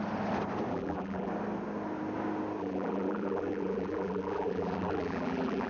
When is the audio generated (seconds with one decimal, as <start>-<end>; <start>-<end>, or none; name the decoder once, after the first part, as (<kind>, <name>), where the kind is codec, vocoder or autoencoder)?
0.7-1.3 (vocoder, BigVGAN v2); 2.6-5.7